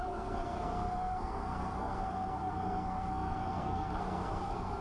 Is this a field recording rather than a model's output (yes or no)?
no